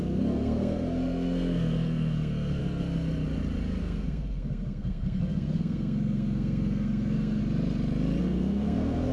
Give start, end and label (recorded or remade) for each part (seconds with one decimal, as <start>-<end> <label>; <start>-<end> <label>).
0.0-2.6 remade; 2.6-3.8 recorded; 3.8-7.4 remade; 7.4-8.2 recorded; 8.2-9.1 remade